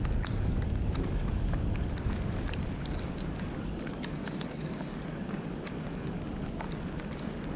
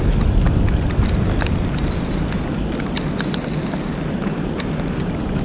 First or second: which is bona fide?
second